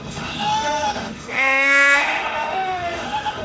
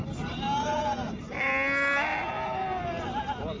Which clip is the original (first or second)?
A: second